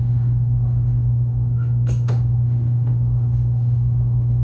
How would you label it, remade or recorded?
remade